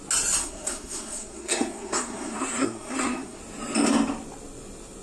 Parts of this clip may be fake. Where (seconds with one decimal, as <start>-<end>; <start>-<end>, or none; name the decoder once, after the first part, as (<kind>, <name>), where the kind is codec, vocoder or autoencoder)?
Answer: 0.4-3.4 (codec, SNAC)